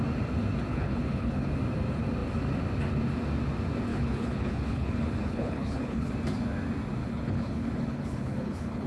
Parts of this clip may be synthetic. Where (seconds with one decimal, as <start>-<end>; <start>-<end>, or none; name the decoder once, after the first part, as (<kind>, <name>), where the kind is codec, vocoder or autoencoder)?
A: 0.7-1.5 (codec, HILCodec); 3.9-6.1; 7.0-8.9